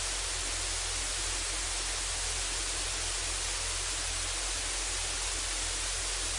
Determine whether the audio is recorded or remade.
recorded